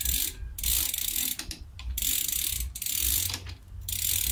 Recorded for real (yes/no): yes